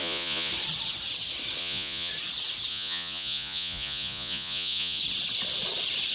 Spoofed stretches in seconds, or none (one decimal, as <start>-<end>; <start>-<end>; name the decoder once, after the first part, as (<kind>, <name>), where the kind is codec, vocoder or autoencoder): 0.0-0.5 (vocoder, Vocos); 1.6-2.1; 2.7-5.0